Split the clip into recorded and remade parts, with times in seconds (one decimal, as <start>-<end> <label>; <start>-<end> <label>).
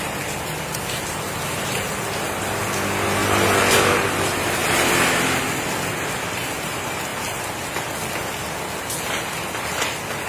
0.0-10.3 recorded